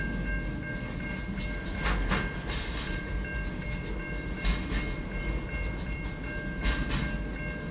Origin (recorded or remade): recorded